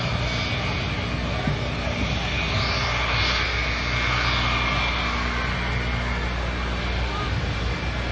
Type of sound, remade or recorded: recorded